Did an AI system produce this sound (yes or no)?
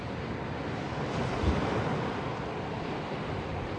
no